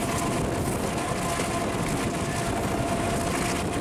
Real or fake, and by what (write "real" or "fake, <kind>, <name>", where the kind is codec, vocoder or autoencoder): real